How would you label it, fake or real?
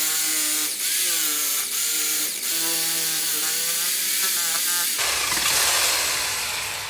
fake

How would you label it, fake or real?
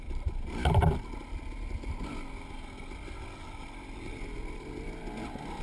real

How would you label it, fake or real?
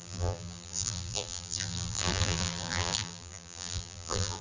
fake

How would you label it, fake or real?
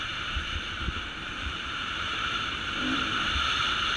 fake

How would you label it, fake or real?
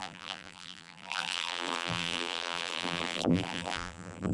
fake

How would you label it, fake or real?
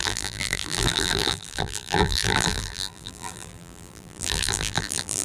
fake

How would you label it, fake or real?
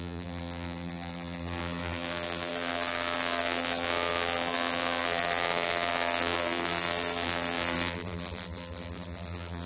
fake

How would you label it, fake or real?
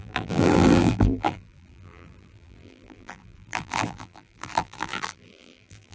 fake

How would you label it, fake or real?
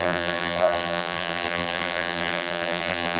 fake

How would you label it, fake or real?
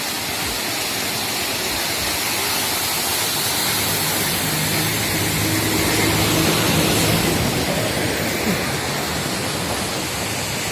real